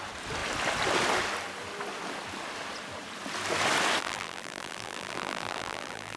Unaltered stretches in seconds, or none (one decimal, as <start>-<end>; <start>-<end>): 0.0-4.0